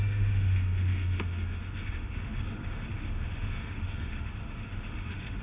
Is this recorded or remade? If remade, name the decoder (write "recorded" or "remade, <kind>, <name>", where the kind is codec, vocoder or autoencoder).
remade, autoencoder, DAC-VAE